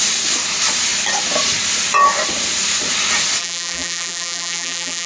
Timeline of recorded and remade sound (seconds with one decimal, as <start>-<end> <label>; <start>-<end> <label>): 0.0-3.4 recorded; 3.4-5.1 remade